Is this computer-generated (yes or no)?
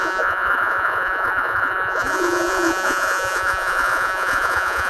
yes